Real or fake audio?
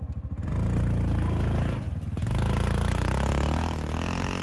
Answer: real